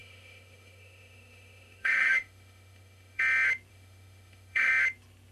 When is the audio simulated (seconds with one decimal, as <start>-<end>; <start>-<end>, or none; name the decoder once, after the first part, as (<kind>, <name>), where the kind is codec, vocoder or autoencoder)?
0.0-3.2 (autoencoder, DAC-VAE); 3.7-4.7